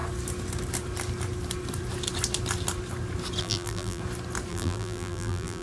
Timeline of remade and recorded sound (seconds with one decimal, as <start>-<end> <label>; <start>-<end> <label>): 0.0-3.4 recorded; 3.4-4.0 remade; 4.0-4.5 recorded; 4.5-5.6 remade